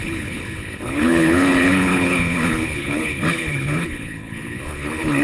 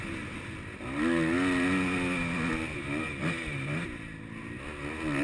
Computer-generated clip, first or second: first